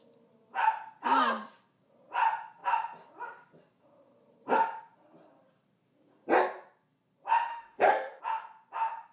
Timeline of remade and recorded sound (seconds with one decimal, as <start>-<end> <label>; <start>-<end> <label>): 0.0-7.5 recorded; 7.5-8.2 remade; 8.2-9.1 recorded

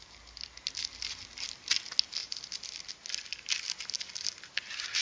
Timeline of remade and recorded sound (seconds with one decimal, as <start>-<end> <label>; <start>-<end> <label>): 0.0-5.0 recorded

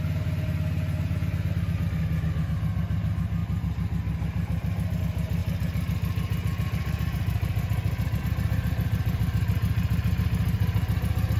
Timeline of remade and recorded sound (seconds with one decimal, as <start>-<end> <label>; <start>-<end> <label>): 0.0-11.4 recorded

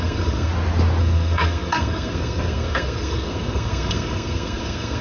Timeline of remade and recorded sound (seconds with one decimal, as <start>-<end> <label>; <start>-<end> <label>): 0.0-0.5 remade; 0.5-1.0 recorded; 1.0-5.0 remade

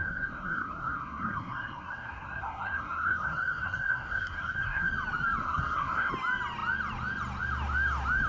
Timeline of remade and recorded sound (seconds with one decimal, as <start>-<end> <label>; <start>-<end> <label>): 0.0-4.9 remade; 4.9-5.4 recorded; 5.4-6.1 remade; 6.1-8.3 recorded

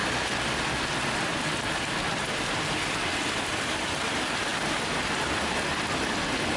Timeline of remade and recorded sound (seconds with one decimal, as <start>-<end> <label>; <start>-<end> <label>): 0.0-6.6 recorded